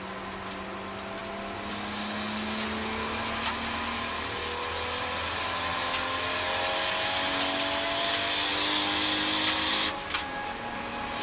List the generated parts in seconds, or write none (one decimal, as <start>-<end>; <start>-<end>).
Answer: none

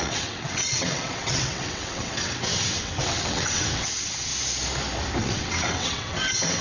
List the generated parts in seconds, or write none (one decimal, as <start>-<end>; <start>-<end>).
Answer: 0.0-4.3; 5.2-6.6

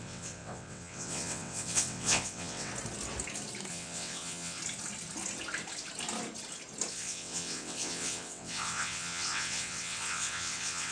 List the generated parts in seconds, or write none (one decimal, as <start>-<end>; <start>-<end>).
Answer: 0.0-2.7; 3.7-4.6; 6.9-10.9